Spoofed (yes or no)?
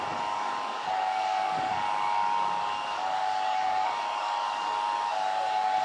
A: yes